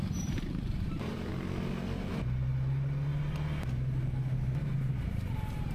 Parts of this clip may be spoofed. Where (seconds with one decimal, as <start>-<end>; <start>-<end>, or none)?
0.0-1.3; 4.7-5.7